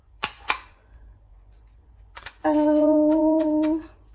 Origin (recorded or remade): remade